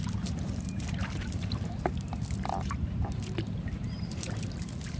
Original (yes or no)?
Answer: no